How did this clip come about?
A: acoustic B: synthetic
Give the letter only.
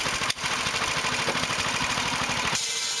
A